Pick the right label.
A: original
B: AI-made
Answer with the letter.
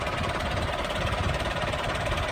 B